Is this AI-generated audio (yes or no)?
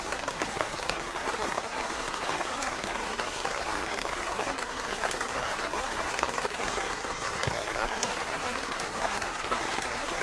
yes